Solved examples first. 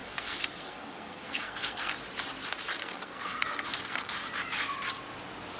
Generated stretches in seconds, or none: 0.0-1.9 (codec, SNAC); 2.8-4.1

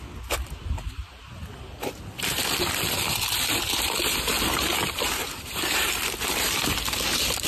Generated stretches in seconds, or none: 5.2-5.9 (vocoder, BigVGAN v2)

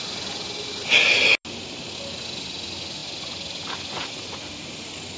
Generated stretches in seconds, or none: 3.0-4.1 (vocoder, BigVGAN v2)

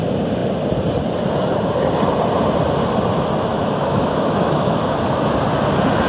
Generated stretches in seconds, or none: 3.5-4.9 (autoencoder, DAC-VAE)

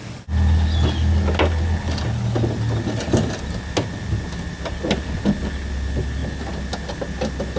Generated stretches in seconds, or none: none

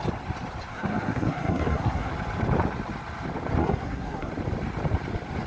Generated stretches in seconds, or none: 0.7-2.1 (codec, SNAC); 3.6-4.3

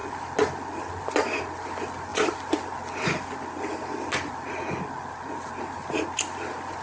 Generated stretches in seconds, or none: none